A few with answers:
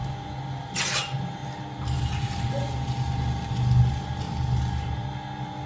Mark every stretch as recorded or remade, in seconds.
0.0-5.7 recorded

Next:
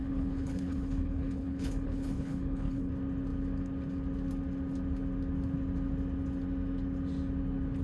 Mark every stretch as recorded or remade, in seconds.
0.0-2.9 remade; 2.9-7.8 recorded

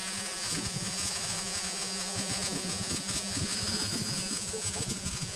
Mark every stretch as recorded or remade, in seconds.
0.0-5.4 remade

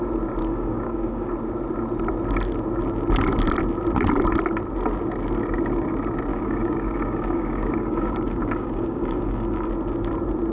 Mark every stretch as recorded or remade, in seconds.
0.0-0.4 recorded; 0.4-1.3 remade; 1.3-6.3 recorded; 6.3-9.7 remade; 9.7-10.5 recorded

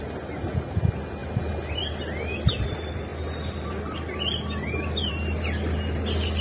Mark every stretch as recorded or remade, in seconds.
0.0-1.2 recorded; 1.2-1.8 remade; 1.8-3.1 recorded; 3.1-5.1 remade; 5.1-6.4 recorded

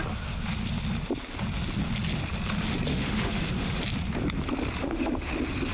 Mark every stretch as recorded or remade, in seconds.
0.0-2.9 recorded; 2.9-3.8 remade; 3.8-4.8 recorded; 4.8-5.3 remade; 5.3-5.7 recorded